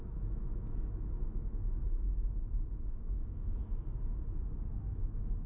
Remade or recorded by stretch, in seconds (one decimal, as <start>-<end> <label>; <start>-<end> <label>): 0.0-3.6 remade; 3.6-4.7 recorded; 4.7-5.5 remade